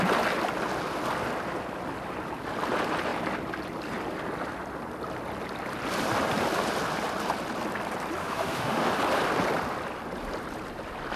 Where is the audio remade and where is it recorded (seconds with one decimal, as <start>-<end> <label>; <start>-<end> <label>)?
0.0-8.2 recorded; 8.2-8.9 remade; 8.9-11.2 recorded